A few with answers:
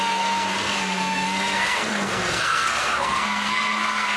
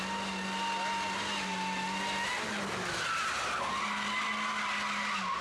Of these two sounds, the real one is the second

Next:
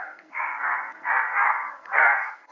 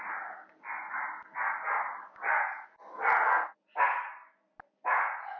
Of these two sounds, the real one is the second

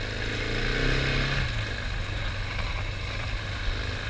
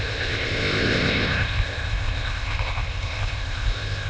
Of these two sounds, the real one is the first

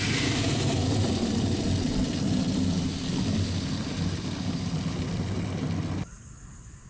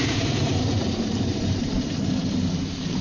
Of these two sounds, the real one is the first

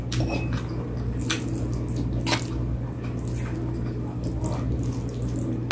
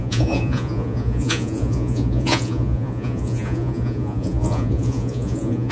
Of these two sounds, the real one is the first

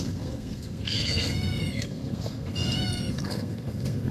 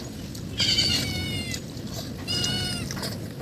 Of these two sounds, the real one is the second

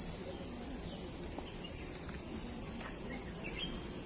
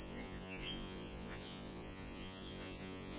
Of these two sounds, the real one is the first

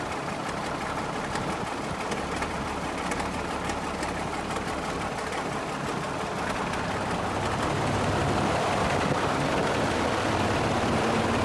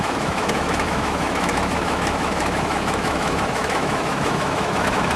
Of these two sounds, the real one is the first